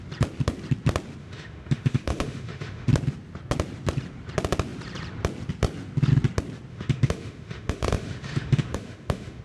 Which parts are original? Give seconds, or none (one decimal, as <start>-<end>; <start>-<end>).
0.0-1.2; 2.9-6.7